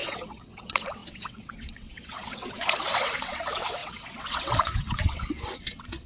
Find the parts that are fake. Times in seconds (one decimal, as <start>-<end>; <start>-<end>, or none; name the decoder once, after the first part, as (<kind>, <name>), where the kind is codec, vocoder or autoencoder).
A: 0.0-6.1 (vocoder, WaveNeXt)